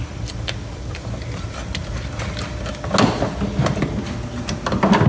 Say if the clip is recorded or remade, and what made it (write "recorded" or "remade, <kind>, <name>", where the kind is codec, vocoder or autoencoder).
recorded